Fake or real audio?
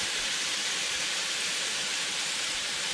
fake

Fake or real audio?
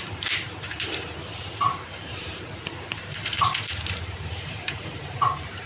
fake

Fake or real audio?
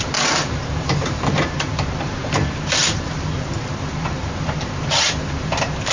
fake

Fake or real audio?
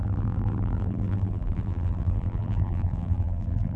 fake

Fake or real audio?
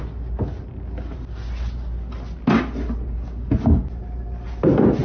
real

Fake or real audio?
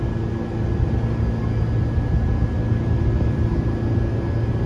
real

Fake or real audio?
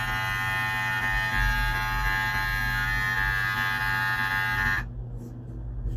real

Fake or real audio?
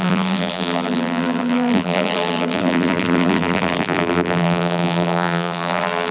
fake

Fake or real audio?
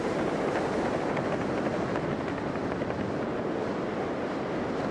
real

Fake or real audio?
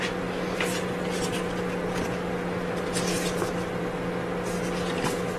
real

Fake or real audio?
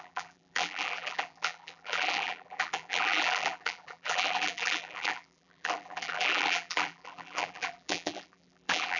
fake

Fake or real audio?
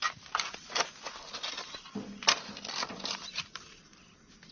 real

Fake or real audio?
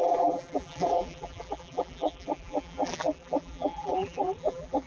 fake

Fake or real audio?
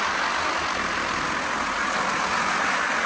real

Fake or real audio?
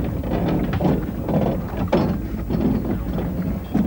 real